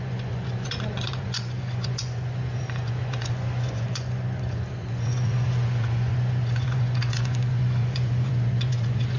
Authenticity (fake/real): fake